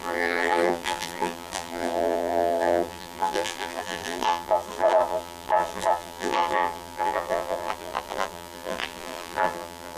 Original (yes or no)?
no